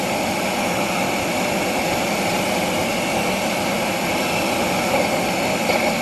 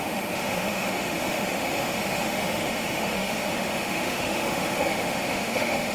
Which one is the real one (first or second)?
first